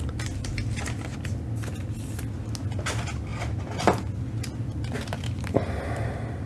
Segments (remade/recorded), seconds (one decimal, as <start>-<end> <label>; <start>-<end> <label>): 0.0-6.5 recorded